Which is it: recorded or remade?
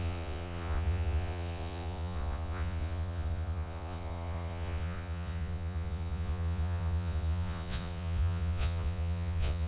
remade